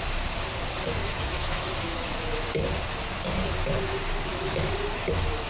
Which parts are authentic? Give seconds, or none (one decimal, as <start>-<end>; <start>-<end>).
0.0-1.0; 2.1-4.3